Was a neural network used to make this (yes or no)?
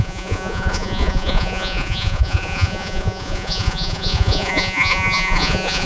yes